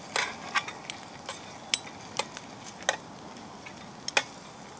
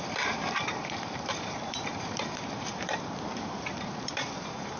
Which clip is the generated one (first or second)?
second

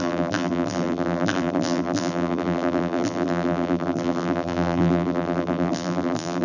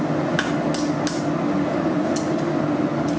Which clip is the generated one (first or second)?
first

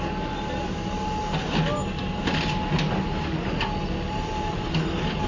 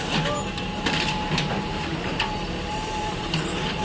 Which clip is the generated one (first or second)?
second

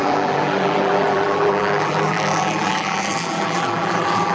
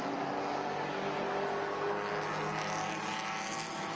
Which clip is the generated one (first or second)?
first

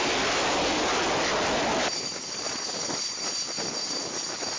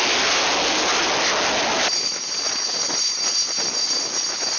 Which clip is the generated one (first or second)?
first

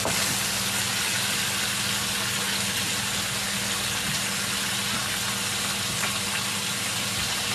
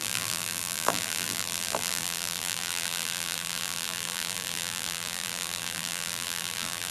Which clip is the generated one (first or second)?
second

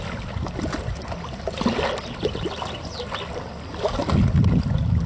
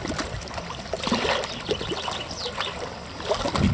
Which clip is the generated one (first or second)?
first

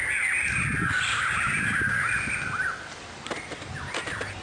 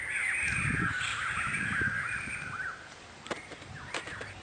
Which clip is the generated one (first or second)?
second